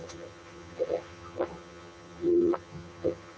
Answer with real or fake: fake